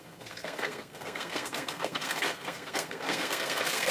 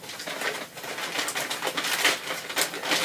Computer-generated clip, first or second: first